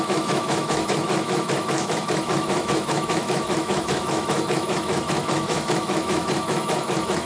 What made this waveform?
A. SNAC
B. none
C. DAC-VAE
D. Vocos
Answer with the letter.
C